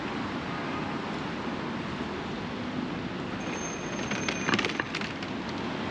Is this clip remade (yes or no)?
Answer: no